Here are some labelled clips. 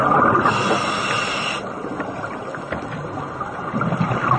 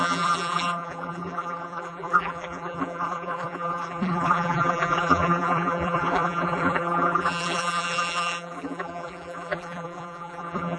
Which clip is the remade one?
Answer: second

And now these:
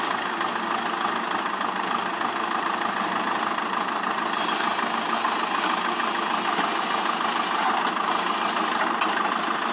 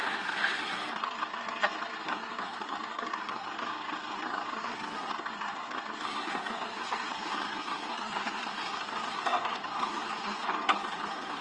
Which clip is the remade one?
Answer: second